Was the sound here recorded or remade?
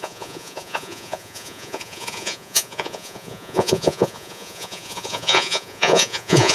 remade